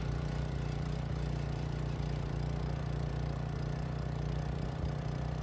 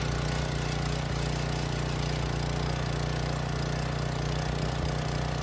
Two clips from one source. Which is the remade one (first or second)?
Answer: first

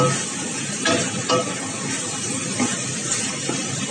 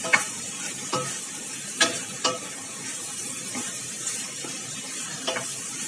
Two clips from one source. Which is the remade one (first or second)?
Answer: second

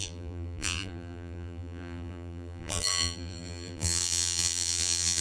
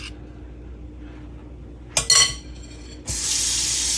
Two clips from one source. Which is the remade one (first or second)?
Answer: first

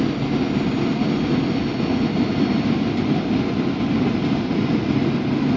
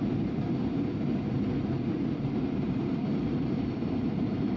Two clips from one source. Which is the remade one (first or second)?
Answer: second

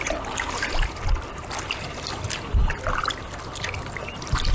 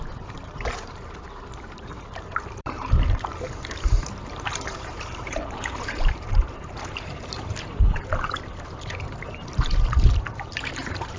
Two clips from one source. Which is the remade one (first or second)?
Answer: second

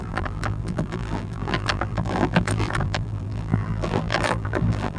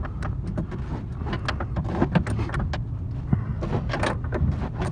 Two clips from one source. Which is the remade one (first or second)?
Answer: first